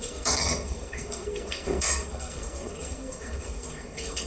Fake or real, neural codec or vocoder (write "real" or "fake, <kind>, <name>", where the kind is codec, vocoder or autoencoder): fake, codec, SNAC